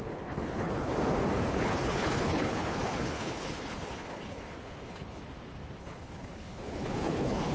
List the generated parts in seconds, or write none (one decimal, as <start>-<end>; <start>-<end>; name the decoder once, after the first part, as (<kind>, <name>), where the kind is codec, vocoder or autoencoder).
0.0-0.9 (codec, HILCodec); 1.5-5.2; 5.8-7.5